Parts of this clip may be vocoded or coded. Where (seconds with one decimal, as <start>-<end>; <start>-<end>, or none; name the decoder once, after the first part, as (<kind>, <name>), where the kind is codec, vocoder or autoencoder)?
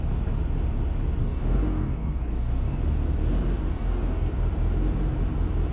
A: 1.2-2.8 (codec, DAC); 3.7-4.3